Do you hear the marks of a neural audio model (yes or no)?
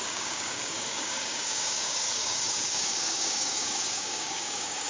yes